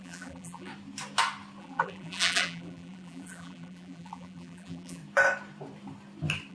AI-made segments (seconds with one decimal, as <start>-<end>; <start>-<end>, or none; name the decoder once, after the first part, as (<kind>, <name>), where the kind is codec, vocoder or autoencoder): 0.0-0.7 (vocoder, BigVGAN v2); 1.6-5.0